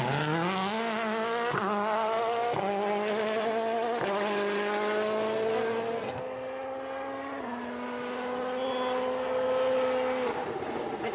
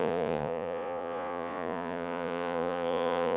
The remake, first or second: second